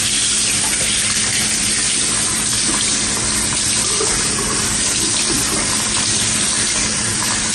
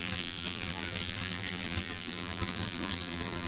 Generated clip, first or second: second